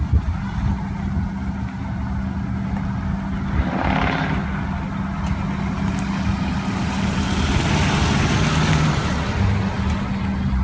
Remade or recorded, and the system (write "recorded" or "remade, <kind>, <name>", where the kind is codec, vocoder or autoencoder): recorded